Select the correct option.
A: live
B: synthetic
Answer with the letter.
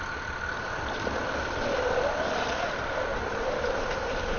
A